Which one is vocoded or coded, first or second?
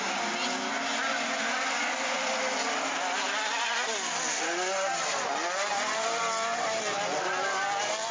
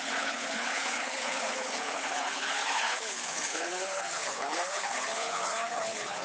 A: second